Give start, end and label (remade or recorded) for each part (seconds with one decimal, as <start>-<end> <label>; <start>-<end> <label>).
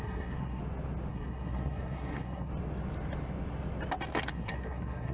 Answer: 0.0-0.6 remade; 0.6-1.1 recorded; 1.1-2.5 remade; 2.5-4.3 recorded; 4.3-5.1 remade